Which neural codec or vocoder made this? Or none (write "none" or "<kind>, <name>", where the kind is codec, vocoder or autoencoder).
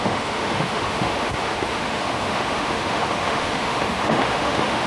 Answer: autoencoder, DAC-VAE